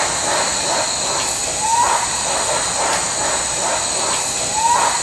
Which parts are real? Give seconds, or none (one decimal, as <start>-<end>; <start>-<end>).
0.0-5.0